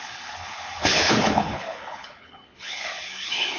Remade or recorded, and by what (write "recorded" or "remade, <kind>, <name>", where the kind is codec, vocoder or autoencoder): remade, codec, HILCodec